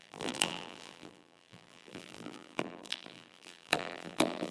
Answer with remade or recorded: remade